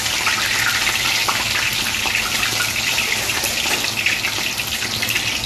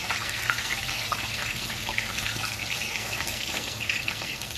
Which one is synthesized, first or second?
second